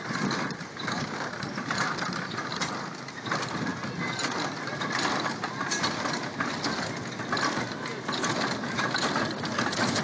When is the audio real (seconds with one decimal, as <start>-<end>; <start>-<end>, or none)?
0.0-0.7; 1.3-10.0